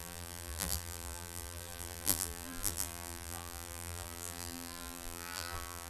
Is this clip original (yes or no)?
no